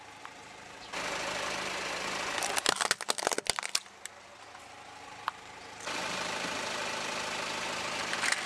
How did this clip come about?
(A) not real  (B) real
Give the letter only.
B